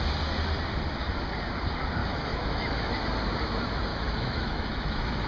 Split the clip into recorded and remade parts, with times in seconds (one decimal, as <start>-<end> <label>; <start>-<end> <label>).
0.0-2.0 recorded; 2.0-2.9 remade; 2.9-3.9 recorded; 3.9-5.3 remade